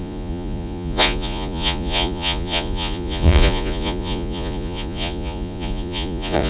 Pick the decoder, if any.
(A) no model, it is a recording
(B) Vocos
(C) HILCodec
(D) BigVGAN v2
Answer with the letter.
B